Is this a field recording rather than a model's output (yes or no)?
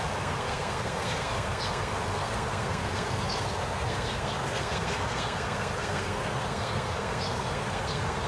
no